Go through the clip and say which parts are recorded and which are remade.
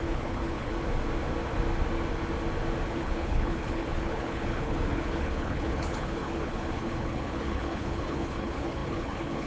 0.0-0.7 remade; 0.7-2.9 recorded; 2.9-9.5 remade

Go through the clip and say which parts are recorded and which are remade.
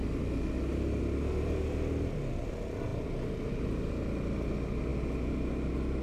0.0-6.0 recorded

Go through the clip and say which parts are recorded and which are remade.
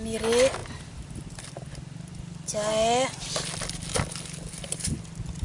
0.0-5.4 recorded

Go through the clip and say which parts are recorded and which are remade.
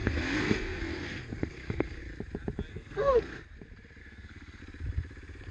0.0-2.0 remade; 2.0-2.7 recorded; 2.7-3.4 remade; 3.4-4.0 recorded; 4.0-4.6 remade; 4.6-5.5 recorded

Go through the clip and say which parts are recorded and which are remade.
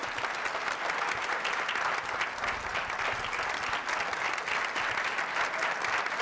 0.0-6.2 recorded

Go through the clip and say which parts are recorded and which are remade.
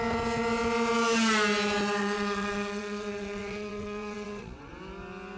0.0-2.0 recorded; 2.0-4.7 remade; 4.7-5.4 recorded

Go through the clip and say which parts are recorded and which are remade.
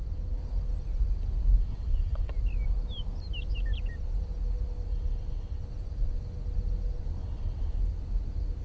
0.0-1.6 recorded; 1.6-2.3 remade; 2.3-4.9 recorded; 4.9-5.6 remade; 5.6-7.2 recorded; 7.2-7.8 remade; 7.8-8.6 recorded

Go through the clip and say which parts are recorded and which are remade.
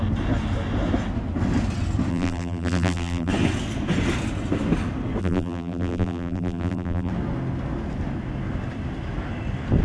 0.0-2.1 recorded; 2.1-3.3 remade; 3.3-5.2 recorded; 5.2-7.1 remade; 7.1-9.8 recorded